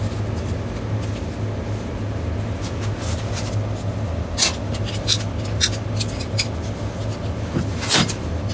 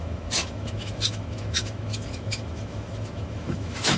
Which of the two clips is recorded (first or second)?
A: first